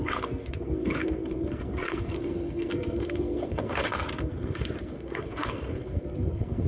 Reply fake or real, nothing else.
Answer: fake